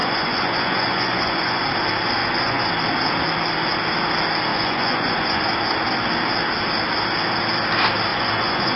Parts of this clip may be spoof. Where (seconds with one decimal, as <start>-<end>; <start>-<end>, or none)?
0.0-1.6; 2.2-2.7; 4.5-5.4; 8.1-8.8